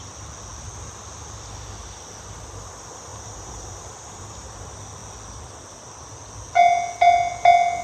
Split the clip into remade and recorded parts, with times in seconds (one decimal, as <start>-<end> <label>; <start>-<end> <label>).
0.0-3.1 recorded; 3.1-4.6 remade; 4.6-7.8 recorded